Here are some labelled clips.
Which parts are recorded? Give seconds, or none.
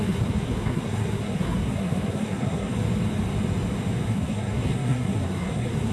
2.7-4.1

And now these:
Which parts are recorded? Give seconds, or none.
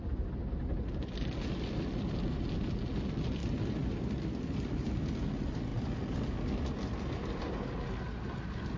0.0-8.8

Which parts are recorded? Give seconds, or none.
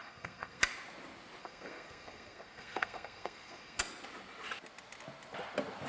0.6-1.4; 3.8-5.9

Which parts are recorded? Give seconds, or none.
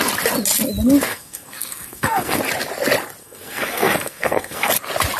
0.0-1.1; 2.4-3.2; 4.7-5.2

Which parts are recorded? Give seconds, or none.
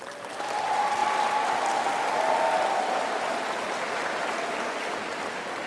0.0-5.7